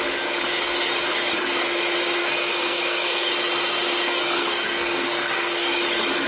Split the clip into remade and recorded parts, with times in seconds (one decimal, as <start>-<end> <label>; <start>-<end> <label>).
0.0-2.2 recorded; 2.2-3.3 remade; 3.3-4.1 recorded; 4.1-5.7 remade; 5.7-6.3 recorded